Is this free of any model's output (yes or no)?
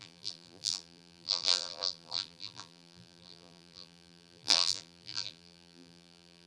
no